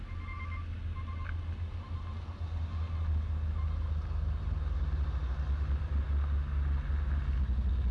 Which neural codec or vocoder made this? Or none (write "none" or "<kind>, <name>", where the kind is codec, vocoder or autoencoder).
none